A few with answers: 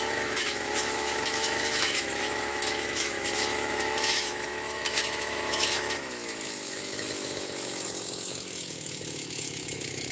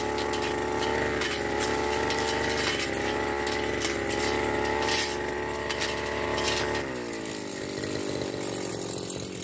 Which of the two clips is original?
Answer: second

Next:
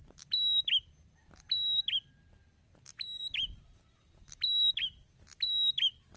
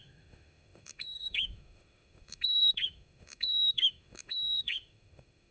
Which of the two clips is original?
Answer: first